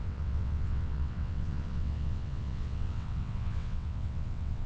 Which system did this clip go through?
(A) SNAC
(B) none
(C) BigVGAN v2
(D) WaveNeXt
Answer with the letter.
D